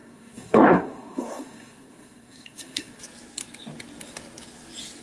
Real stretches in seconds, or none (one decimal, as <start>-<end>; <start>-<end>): 3.0-5.0